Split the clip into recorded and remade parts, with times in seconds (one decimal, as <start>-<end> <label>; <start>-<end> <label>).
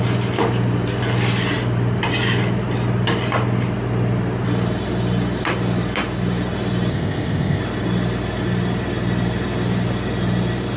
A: 0.0-6.9 recorded; 6.9-7.6 remade; 7.6-10.8 recorded